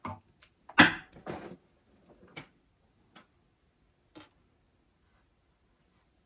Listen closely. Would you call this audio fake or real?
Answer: real